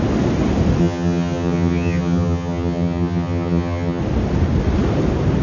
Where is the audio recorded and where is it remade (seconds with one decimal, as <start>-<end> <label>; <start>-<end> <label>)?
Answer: 0.0-0.8 recorded; 0.8-4.0 remade; 4.0-5.4 recorded